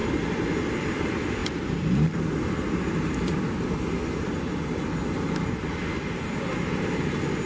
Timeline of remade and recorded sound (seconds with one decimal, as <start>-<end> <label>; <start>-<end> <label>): 0.0-7.5 recorded